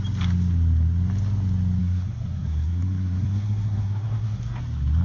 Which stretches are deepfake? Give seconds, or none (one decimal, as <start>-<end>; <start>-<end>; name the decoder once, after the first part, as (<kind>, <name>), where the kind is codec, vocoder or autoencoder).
1.8-4.6 (codec, SNAC)